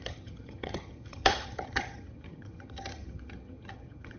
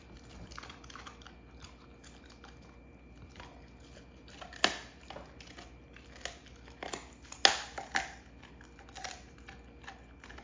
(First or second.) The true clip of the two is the second